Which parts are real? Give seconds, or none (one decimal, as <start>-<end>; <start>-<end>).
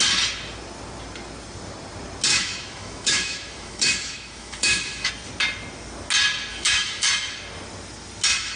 0.0-2.3; 5.1-6.5; 7.1-8.6